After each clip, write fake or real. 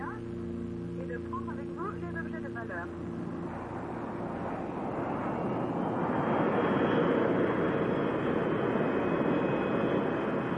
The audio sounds real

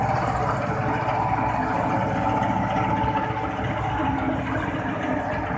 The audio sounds real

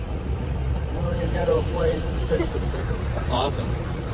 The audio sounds fake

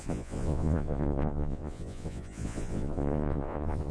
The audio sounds fake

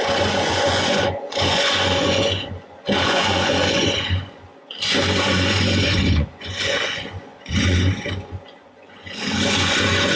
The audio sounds fake